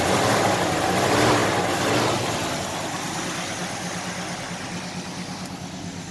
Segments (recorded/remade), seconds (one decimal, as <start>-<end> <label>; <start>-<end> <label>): 0.0-6.1 recorded